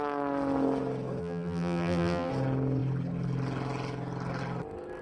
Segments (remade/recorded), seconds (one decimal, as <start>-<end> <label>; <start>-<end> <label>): 0.0-1.2 recorded; 1.2-2.3 remade; 2.3-5.0 recorded